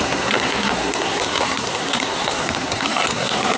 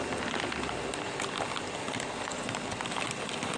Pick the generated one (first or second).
first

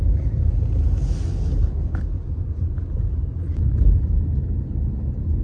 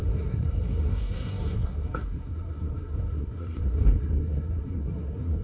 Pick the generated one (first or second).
second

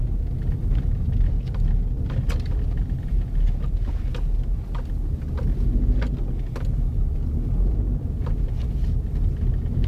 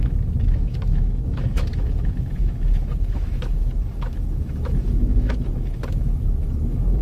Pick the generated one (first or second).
second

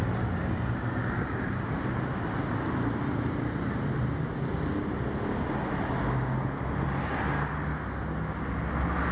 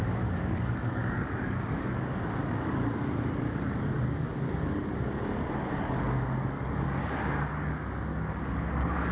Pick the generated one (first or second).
second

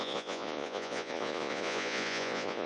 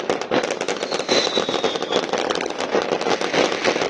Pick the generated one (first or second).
first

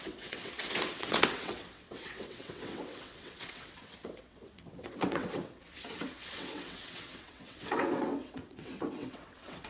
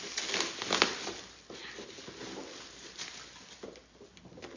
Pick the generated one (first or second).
first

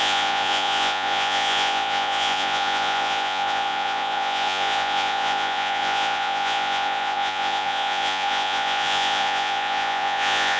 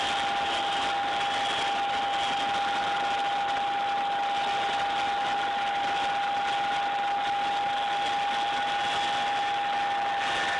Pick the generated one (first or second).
first